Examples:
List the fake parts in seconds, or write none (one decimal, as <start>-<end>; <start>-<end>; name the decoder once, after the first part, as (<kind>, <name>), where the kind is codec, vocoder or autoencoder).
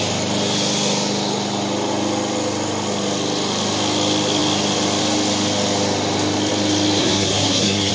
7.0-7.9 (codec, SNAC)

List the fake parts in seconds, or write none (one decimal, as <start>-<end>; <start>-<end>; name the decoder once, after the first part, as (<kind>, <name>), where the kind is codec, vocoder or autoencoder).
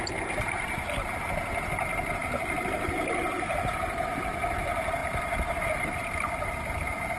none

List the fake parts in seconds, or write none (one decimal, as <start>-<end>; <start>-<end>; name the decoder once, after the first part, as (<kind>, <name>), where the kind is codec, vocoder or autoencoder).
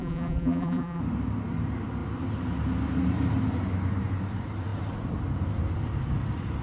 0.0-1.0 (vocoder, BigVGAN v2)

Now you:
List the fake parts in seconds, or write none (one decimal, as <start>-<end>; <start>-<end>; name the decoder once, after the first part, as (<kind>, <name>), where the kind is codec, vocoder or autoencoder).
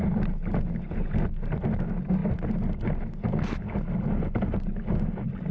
none